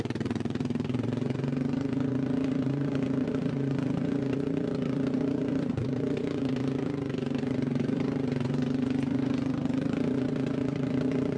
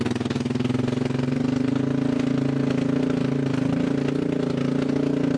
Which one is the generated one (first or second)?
first